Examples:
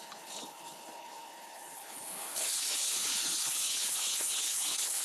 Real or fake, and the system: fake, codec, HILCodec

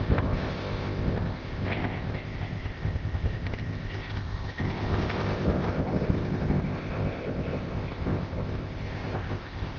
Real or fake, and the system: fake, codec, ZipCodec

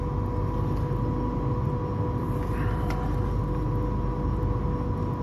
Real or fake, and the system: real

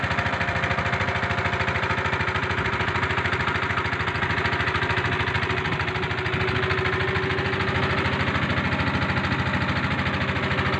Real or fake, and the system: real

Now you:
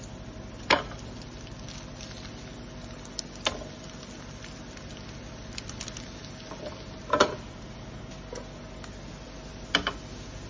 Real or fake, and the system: real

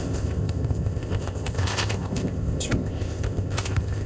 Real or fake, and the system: fake, codec, ZipCodec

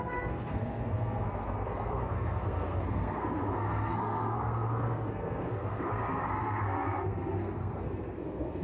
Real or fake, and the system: fake, codec, SNAC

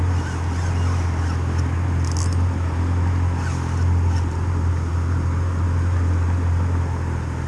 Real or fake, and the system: real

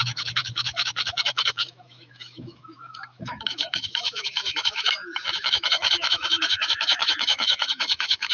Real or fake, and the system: fake, autoencoder, DAC-VAE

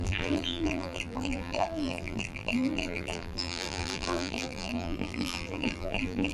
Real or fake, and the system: fake, vocoder, BigVGAN v2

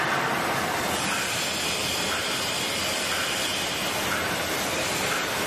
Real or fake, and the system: real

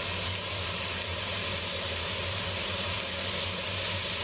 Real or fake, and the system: real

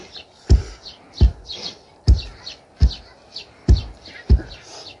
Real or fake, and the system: real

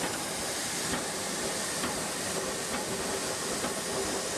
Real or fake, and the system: real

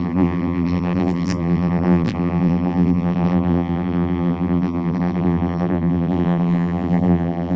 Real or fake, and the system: fake, vocoder, BigVGAN v2